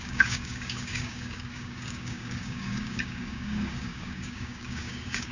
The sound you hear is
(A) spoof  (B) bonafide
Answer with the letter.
A